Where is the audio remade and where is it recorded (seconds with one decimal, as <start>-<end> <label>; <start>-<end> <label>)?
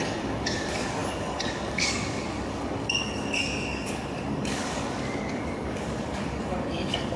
0.0-7.2 remade